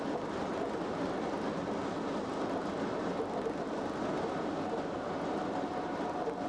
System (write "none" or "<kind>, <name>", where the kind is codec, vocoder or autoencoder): none